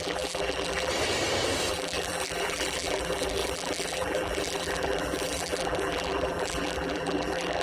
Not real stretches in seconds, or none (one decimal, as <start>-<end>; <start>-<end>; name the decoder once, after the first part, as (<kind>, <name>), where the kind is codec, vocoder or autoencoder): 0.0-0.9 (vocoder, BigVGAN v2); 1.7-7.6